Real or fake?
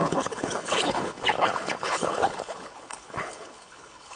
fake